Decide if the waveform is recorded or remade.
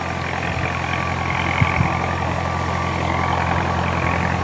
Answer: recorded